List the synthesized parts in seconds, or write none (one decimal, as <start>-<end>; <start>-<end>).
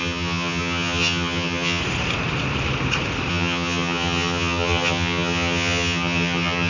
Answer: 0.0-1.8; 3.3-6.7